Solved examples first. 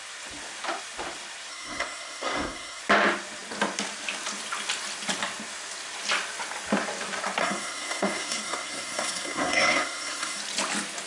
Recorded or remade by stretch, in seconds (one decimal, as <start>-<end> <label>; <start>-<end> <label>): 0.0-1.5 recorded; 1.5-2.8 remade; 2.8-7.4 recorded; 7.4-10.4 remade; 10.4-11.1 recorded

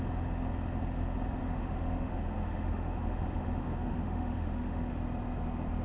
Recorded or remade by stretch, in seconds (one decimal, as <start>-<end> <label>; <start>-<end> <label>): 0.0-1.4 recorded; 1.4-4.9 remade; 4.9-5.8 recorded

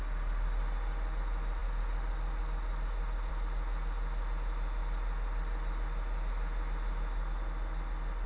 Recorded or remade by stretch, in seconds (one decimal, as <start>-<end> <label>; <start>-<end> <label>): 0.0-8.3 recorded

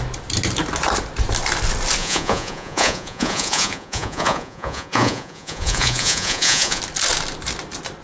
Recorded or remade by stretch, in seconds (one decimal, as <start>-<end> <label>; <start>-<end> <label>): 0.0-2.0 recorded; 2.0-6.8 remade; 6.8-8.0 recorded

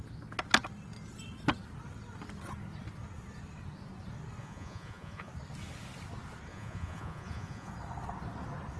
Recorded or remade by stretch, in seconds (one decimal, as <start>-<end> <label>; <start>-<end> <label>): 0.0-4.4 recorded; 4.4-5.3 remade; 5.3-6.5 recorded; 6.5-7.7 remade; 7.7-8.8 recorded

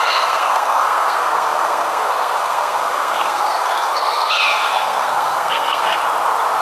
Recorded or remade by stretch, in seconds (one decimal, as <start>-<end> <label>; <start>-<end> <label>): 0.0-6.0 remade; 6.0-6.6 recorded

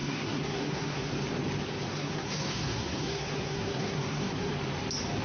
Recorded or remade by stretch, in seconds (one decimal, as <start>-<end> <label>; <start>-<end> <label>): 0.0-1.1 remade; 1.1-1.9 recorded; 1.9-4.5 remade; 4.5-5.2 recorded

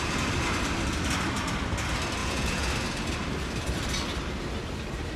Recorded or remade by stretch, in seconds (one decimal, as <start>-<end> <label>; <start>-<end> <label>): 0.0-2.2 recorded; 2.2-2.7 remade; 2.7-5.2 recorded